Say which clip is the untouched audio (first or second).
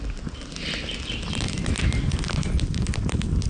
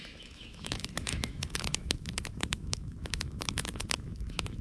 first